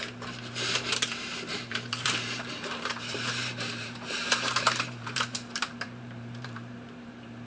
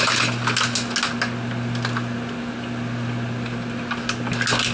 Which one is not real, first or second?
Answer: first